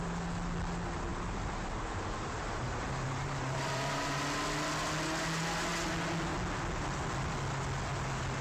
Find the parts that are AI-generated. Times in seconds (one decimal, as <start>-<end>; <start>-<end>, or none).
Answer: 1.1-4.2